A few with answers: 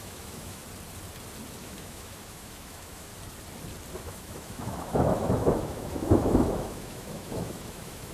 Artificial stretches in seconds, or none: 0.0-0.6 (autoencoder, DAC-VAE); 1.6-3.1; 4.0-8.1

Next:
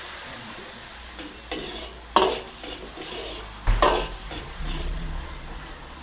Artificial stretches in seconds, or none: 0.0-0.8 (vocoder, Vocos); 4.4-6.0

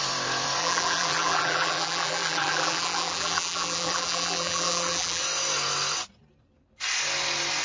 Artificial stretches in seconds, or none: 0.6-5.2 (vocoder, BigVGAN v2)

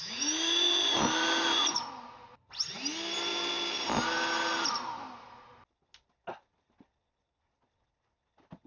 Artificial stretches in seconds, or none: none

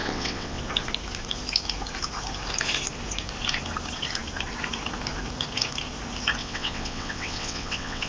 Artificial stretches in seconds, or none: 0.0-0.6 (vocoder, WaveNeXt); 6.4-8.1

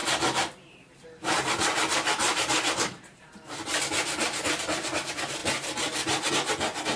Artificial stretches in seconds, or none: 0.0-3.8 (vocoder, BigVGAN v2)

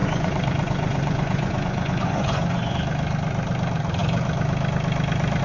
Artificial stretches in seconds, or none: 0.0-2.7 (vocoder, Vocos)